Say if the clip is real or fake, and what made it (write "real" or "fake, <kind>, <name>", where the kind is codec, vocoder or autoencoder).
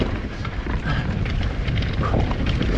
fake, vocoder, BigVGAN v2